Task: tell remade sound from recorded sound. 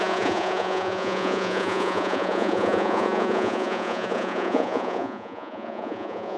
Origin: remade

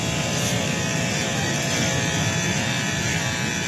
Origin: recorded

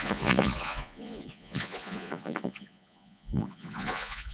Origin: remade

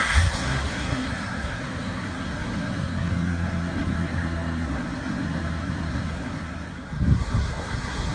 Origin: remade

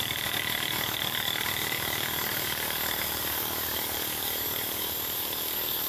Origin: remade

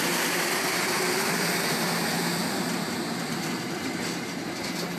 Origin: recorded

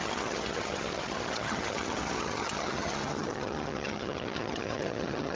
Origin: remade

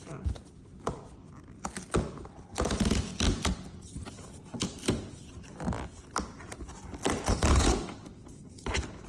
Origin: recorded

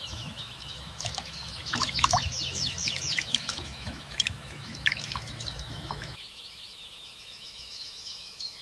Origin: remade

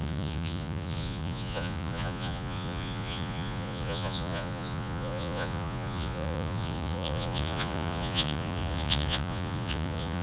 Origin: remade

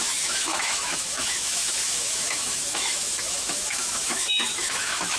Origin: remade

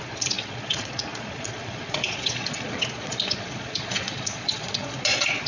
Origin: remade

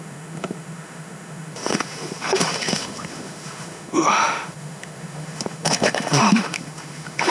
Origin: remade